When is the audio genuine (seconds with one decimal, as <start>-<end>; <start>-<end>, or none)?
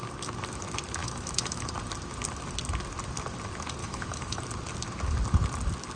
0.0-1.0; 1.7-3.8; 4.4-6.0